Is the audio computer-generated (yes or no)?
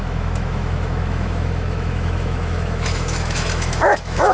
yes